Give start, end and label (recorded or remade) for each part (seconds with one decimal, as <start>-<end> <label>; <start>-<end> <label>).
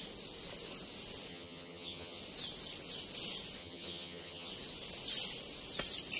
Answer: 0.0-1.3 recorded; 1.3-2.2 remade; 2.2-3.6 recorded; 3.6-4.5 remade; 4.5-6.2 recorded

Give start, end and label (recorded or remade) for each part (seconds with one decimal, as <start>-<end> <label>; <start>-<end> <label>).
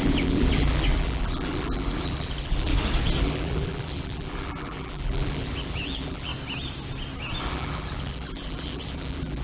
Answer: 0.0-2.7 remade; 2.7-3.2 recorded; 3.2-6.3 remade; 6.3-7.4 recorded; 7.4-9.4 remade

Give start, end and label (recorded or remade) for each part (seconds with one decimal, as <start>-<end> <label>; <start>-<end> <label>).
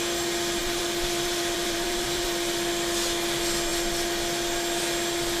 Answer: 0.0-0.6 recorded; 0.6-2.7 remade; 2.7-5.4 recorded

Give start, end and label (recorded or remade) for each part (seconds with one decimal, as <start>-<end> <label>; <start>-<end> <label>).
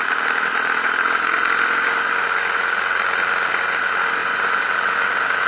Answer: 0.0-5.5 recorded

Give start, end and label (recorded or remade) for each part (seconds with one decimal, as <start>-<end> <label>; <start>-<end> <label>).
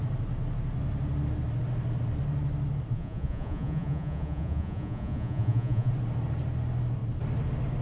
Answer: 0.0-2.9 recorded; 2.9-5.9 remade; 5.9-7.8 recorded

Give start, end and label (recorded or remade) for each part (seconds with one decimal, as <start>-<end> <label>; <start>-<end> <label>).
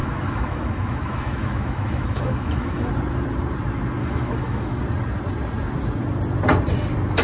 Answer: 0.0-2.9 remade; 2.9-4.0 recorded; 4.0-4.8 remade; 4.8-7.2 recorded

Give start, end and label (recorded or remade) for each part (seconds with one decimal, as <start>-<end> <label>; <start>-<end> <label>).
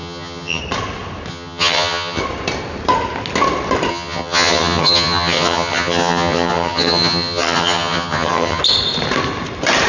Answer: 0.0-0.6 remade; 0.6-1.3 recorded; 1.3-2.2 remade; 2.2-3.9 recorded; 3.9-8.6 remade; 8.6-9.9 recorded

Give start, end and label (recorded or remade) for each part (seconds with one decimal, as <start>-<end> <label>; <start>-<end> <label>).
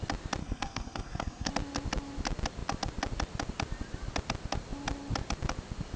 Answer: 0.0-0.4 recorded; 0.4-1.5 remade; 1.5-6.0 recorded